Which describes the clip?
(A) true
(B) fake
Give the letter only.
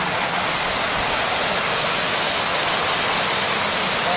A